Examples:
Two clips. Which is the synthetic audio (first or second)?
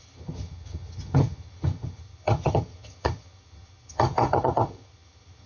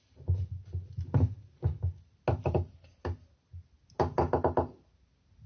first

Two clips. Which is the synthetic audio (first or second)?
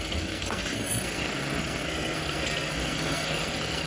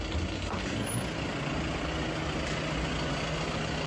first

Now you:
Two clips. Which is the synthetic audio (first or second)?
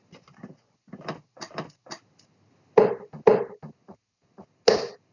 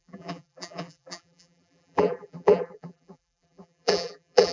second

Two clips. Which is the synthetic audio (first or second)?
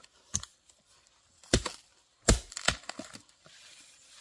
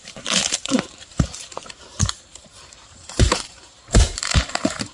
second